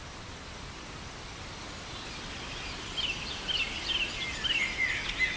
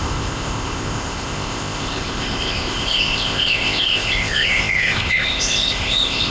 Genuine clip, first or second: first